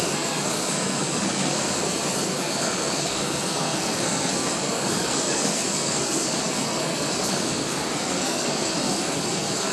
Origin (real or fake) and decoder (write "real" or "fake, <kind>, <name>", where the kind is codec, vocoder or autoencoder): fake, codec, SNAC